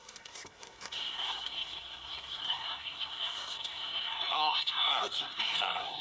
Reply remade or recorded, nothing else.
remade